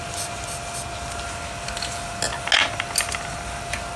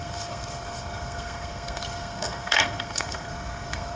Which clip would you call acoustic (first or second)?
first